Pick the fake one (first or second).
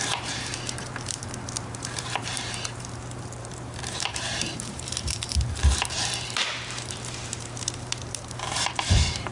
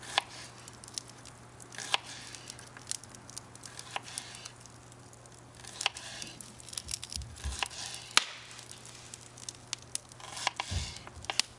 first